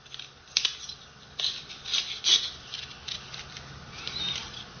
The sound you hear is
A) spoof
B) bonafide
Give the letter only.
B